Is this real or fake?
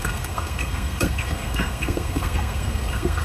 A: fake